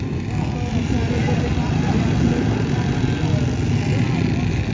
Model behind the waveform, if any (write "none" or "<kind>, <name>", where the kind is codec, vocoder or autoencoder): none